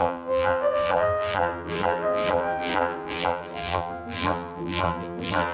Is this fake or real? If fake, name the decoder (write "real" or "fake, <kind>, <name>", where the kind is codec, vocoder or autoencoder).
fake, vocoder, BigVGAN v2